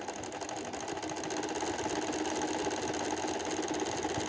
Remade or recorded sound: recorded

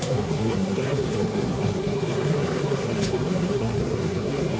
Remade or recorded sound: remade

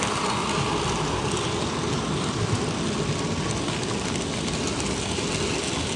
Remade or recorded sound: recorded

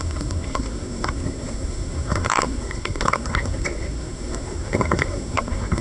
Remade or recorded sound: remade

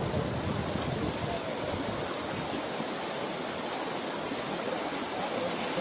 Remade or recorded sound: recorded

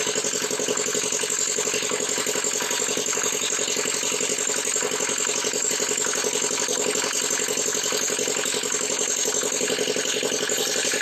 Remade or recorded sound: recorded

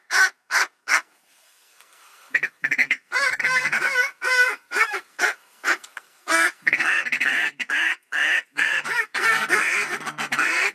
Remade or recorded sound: remade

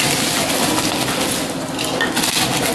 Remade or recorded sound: recorded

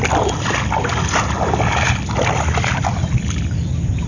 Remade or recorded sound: recorded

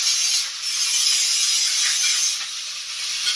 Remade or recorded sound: recorded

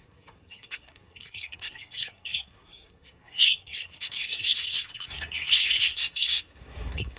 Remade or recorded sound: remade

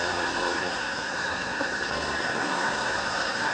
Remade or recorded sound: remade